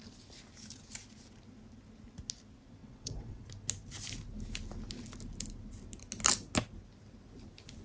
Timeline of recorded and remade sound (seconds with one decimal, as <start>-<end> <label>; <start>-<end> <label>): 0.0-2.8 recorded; 2.8-3.5 remade; 3.5-7.8 recorded